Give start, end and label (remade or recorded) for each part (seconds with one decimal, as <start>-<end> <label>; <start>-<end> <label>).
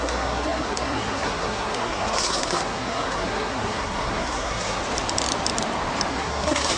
0.0-4.8 remade; 4.8-6.1 recorded; 6.1-6.8 remade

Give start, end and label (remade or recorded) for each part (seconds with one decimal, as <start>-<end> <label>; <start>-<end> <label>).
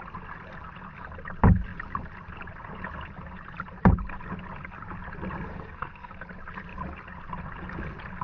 0.0-5.5 recorded; 5.5-6.1 remade; 6.1-8.2 recorded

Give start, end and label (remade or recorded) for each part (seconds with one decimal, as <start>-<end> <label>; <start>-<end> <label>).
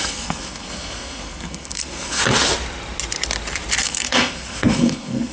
0.0-2.2 remade; 2.2-3.8 recorded; 3.8-5.3 remade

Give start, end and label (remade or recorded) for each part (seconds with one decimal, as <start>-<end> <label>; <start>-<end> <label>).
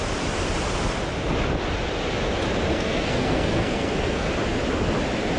0.0-2.7 recorded; 2.7-4.3 remade; 4.3-5.4 recorded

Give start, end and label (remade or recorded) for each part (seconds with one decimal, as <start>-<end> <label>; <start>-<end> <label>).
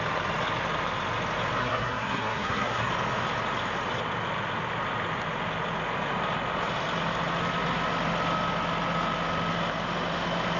0.0-1.6 recorded; 1.6-2.9 remade; 2.9-10.6 recorded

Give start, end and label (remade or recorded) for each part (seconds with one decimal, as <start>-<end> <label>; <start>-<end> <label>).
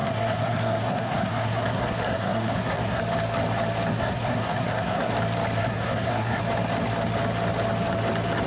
0.0-3.0 remade; 3.0-3.9 recorded; 3.9-5.1 remade; 5.1-5.6 recorded; 5.6-6.4 remade; 6.4-8.5 recorded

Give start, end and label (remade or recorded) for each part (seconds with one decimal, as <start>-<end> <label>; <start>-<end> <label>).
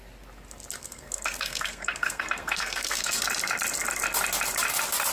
0.0-0.8 recorded; 0.8-3.2 remade; 3.2-5.1 recorded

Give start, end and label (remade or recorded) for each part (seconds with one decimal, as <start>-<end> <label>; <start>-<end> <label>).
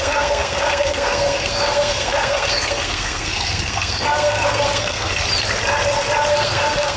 0.0-5.1 remade; 5.1-6.3 recorded; 6.3-7.0 remade